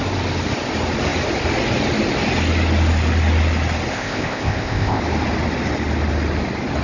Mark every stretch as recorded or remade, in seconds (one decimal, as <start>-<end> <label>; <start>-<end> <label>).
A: 0.0-3.9 recorded; 3.9-5.0 remade; 5.0-6.8 recorded